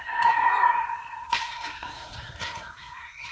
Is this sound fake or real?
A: fake